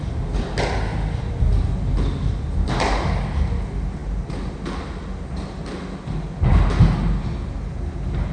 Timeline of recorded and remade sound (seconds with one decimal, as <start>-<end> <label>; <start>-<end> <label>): 0.0-8.3 recorded